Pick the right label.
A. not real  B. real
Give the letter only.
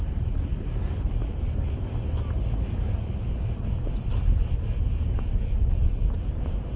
B